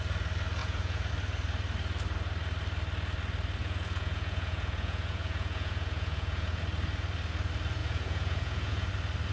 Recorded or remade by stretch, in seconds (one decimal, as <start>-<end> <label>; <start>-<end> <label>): 0.0-0.6 recorded; 0.6-1.1 remade; 1.1-3.6 recorded; 3.6-6.6 remade; 6.6-7.8 recorded; 7.8-8.9 remade; 8.9-9.3 recorded